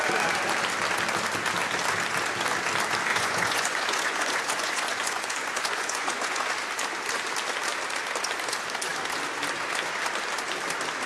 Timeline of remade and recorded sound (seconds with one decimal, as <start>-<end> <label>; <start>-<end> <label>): 0.0-3.1 recorded; 3.1-6.5 remade; 6.5-11.1 recorded